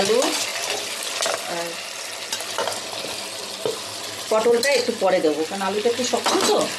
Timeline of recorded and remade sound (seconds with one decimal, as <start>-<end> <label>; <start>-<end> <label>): 0.0-6.8 recorded